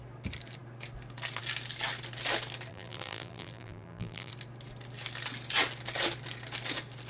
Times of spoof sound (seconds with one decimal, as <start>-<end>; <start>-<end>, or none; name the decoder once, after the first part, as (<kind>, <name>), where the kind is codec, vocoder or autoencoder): 2.7-4.3 (vocoder, BigVGAN v2)